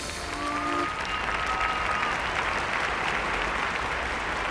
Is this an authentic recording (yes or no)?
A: yes